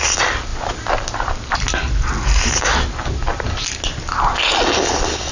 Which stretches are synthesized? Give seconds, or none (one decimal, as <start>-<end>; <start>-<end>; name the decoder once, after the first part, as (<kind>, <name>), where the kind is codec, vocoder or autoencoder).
none